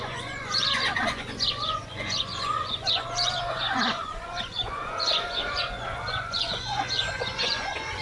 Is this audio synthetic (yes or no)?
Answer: yes